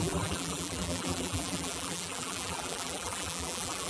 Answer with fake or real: fake